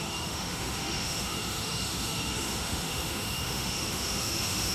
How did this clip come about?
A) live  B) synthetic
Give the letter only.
B